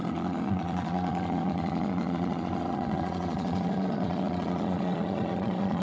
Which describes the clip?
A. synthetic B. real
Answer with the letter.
A